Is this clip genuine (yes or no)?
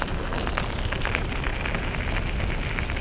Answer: yes